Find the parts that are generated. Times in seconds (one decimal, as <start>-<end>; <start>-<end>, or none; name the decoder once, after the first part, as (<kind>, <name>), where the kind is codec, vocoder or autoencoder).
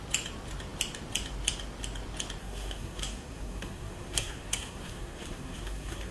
2.4-6.1 (codec, SNAC)